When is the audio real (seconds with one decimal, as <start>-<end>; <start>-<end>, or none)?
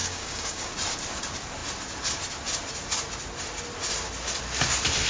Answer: 0.7-5.1